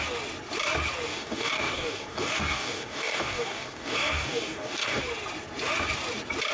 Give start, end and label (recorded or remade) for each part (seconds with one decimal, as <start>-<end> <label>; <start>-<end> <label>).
0.0-1.1 recorded; 1.1-5.0 remade; 5.0-6.5 recorded